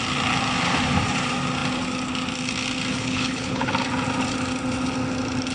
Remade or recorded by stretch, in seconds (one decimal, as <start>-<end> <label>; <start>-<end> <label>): 0.0-2.9 recorded; 2.9-3.7 remade; 3.7-5.5 recorded